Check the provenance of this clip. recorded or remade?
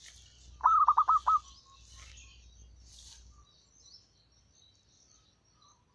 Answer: recorded